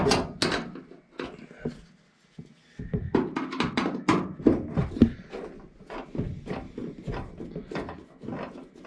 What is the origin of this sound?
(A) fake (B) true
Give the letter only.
B